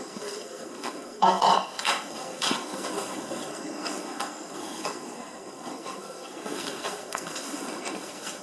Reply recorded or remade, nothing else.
remade